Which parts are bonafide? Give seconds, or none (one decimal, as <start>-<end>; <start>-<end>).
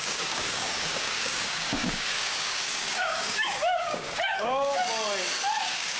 4.8-5.6